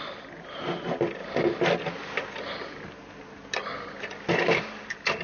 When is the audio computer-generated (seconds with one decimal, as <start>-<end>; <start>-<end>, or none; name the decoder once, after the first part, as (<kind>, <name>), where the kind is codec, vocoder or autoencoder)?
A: none